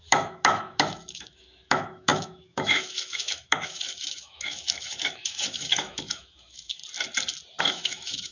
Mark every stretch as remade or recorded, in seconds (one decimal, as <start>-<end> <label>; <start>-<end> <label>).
0.0-6.8 remade; 6.8-7.6 recorded; 7.6-8.3 remade